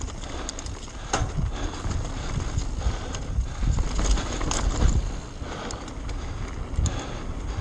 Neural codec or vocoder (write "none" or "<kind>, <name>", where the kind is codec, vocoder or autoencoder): none